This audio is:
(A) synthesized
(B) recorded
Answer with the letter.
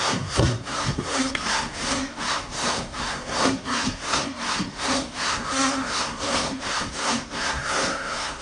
A